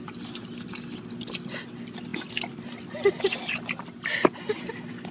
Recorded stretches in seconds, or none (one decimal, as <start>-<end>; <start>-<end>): 0.0-5.1

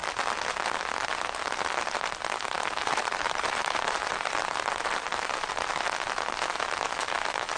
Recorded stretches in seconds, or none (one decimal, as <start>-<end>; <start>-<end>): 0.0-2.8; 5.5-7.6

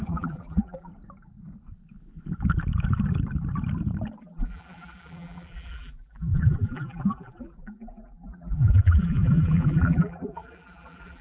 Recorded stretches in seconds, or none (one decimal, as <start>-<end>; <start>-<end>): 0.9-4.2

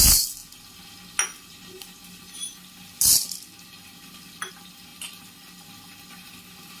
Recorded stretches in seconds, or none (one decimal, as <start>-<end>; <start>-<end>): 0.0-6.8

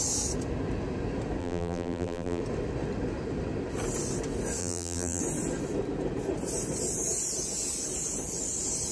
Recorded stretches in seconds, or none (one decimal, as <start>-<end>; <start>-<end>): 0.0-1.4; 2.4-4.6; 5.2-8.9